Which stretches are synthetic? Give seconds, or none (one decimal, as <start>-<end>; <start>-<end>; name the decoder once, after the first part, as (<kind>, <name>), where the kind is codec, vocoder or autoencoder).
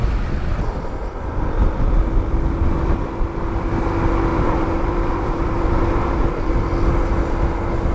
4.3-6.5 (vocoder, BigVGAN v2)